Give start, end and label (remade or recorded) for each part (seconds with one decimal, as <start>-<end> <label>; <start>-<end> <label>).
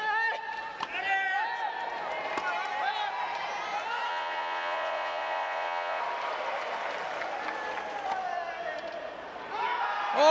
0.0-4.1 recorded; 4.1-6.0 remade; 6.0-10.3 recorded